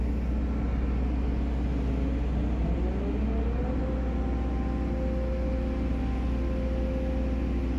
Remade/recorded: recorded